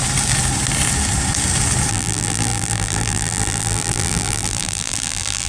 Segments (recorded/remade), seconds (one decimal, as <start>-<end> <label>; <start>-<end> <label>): 0.0-1.9 recorded; 1.9-5.5 remade

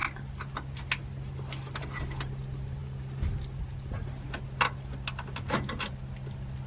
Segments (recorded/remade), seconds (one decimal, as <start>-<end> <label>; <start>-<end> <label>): 0.0-6.7 recorded

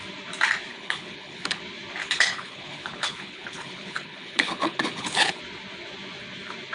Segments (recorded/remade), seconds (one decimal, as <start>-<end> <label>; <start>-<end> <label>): 0.0-0.7 recorded; 0.7-1.6 remade; 1.6-2.0 recorded; 2.0-5.4 remade; 5.4-6.7 recorded

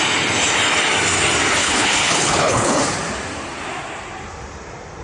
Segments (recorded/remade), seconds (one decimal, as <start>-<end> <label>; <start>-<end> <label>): 0.0-1.6 recorded; 1.6-2.8 remade; 2.8-5.0 recorded

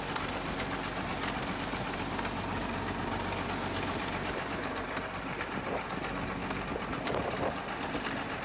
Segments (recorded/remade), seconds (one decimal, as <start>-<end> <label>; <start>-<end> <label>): 0.0-8.4 recorded

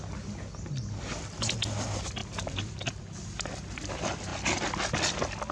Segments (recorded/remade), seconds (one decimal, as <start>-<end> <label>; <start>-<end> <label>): 0.0-5.5 recorded